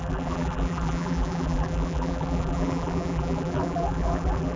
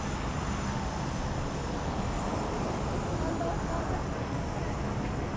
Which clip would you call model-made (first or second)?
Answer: first